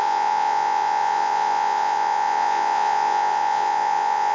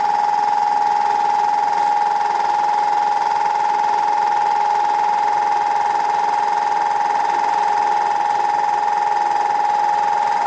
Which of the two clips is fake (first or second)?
first